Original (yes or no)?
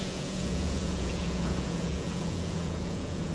no